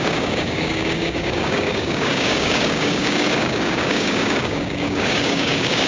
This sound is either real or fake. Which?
fake